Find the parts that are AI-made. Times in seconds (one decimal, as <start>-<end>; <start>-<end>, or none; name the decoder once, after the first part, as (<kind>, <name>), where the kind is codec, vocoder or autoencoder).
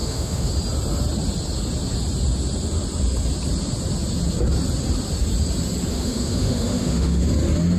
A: 0.0-0.5 (autoencoder, DAC-VAE); 5.9-7.2